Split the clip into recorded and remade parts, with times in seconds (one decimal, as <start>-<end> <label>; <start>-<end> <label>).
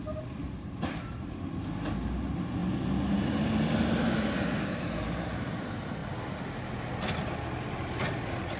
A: 0.0-8.6 recorded